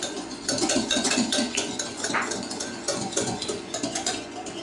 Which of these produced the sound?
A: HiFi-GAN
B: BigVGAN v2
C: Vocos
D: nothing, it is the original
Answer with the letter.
C